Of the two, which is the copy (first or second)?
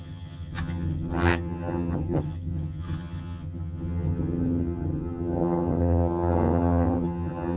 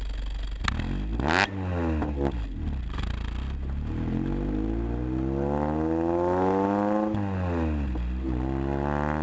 first